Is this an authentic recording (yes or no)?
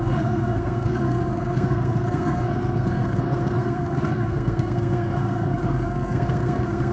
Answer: no